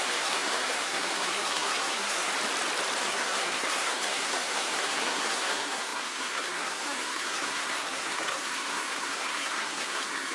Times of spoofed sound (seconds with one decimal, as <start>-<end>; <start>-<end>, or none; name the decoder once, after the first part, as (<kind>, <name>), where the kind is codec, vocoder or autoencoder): 0.0-2.3 (codec, SNAC); 3.0-10.3